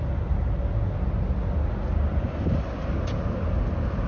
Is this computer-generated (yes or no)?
no